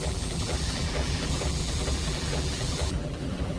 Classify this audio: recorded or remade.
remade